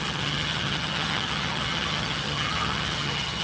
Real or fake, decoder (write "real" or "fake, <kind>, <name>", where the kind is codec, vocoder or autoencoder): fake, vocoder, HiFi-GAN